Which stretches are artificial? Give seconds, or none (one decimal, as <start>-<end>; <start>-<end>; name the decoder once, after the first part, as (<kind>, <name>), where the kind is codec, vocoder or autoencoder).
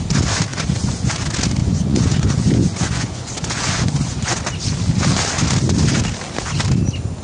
0.5-1.1 (vocoder, Vocos); 1.6-4.4